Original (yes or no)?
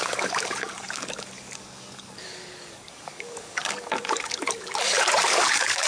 no